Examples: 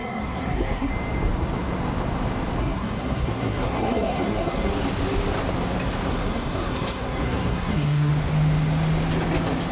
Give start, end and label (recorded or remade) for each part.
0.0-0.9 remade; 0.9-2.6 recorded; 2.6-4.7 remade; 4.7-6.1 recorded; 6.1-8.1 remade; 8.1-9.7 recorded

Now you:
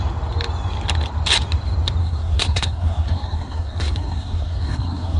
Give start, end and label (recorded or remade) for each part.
0.0-2.0 recorded; 2.0-5.2 remade

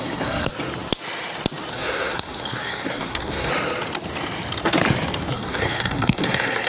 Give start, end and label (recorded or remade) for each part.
0.0-0.5 remade; 0.5-1.7 recorded; 1.7-3.5 remade; 3.5-5.3 recorded; 5.3-6.7 remade

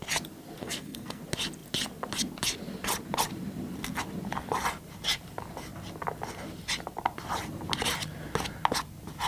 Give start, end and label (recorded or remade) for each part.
0.0-0.6 recorded; 0.6-1.2 remade; 1.2-9.3 recorded

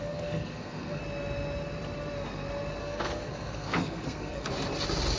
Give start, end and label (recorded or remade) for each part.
0.0-1.0 remade; 1.0-2.8 recorded; 2.8-4.5 remade; 4.5-5.2 recorded

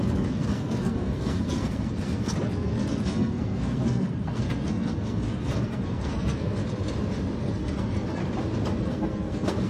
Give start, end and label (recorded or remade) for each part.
0.0-6.6 remade; 6.6-7.4 recorded; 7.4-8.2 remade; 8.2-8.8 recorded; 8.8-9.7 remade

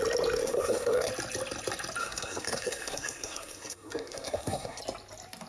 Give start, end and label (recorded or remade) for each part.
0.0-0.4 recorded; 0.4-1.1 remade; 1.1-2.0 recorded; 2.0-4.8 remade; 4.8-5.5 recorded